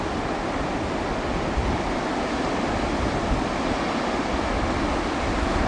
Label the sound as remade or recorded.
recorded